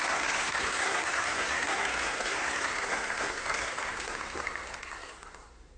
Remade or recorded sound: remade